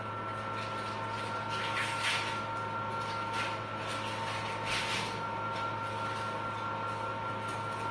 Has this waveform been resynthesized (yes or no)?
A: no